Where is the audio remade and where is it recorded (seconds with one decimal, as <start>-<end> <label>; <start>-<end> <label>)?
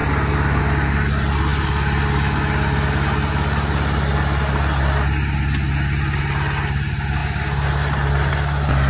0.0-8.9 recorded